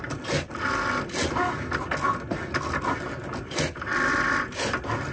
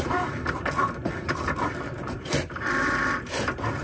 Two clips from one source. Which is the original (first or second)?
first